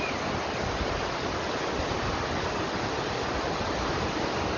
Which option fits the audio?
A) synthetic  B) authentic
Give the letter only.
B